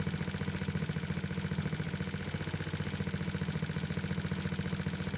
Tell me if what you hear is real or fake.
real